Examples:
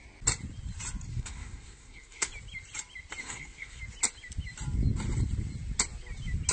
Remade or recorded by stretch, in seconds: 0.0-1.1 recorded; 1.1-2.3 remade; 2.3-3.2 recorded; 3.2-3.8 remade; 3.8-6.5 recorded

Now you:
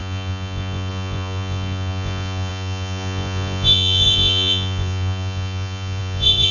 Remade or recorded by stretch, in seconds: 0.0-6.5 remade